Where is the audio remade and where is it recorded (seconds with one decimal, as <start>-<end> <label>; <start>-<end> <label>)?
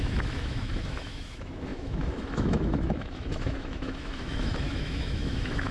0.0-5.7 remade